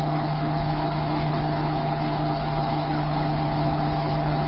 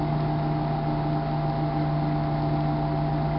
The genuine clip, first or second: second